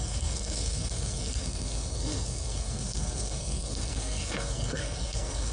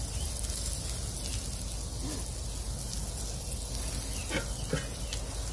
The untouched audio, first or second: second